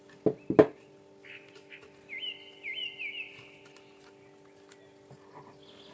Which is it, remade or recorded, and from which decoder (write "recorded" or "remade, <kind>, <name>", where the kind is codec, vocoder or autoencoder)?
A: recorded